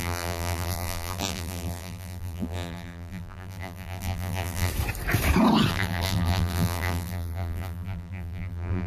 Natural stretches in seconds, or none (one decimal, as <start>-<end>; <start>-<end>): 4.7-5.7

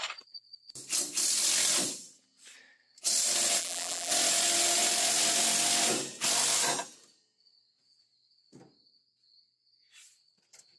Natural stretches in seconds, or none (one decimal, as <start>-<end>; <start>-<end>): 0.0-3.6; 4.1-10.8

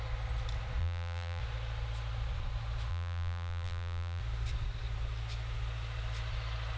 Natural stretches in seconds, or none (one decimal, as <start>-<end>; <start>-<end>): 0.0-0.8; 1.4-2.9; 4.2-6.8